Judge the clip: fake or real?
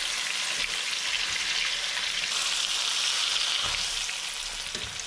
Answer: real